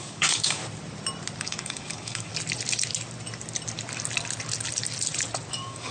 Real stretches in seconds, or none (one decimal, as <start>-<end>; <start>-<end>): 0.6-1.4; 2.3-5.5